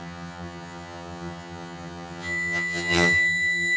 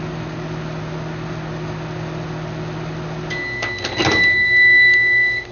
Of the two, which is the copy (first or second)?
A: first